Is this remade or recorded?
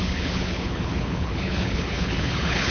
remade